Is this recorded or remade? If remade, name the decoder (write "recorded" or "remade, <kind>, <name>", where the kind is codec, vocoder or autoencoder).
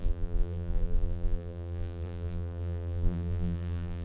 remade, vocoder, BigVGAN v2